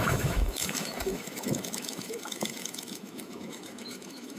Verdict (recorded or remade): remade